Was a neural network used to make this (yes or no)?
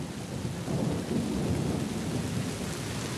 no